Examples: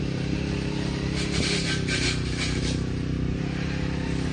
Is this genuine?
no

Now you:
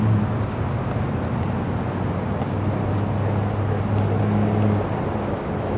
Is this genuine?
yes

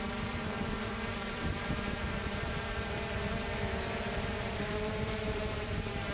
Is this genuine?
no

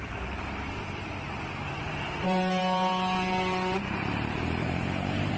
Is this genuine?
no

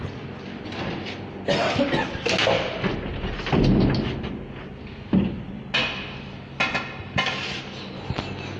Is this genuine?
yes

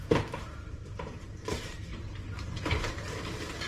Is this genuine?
no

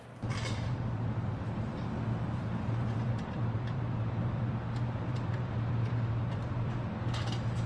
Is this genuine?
no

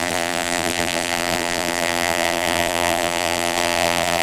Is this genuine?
no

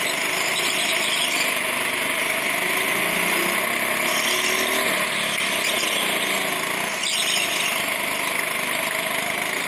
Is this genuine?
yes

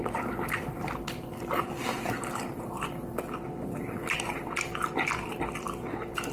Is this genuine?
no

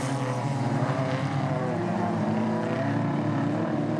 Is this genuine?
no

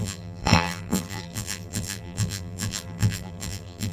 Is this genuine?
no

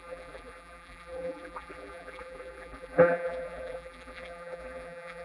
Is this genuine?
no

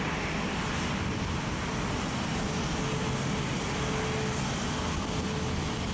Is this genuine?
yes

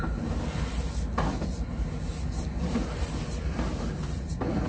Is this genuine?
yes